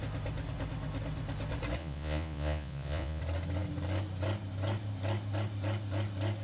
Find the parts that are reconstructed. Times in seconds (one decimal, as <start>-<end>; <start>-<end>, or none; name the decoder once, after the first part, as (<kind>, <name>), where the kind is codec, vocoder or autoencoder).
1.8-3.2 (vocoder, Vocos)